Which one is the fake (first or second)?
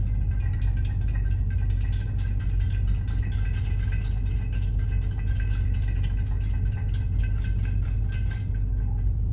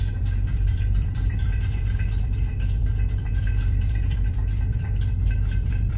second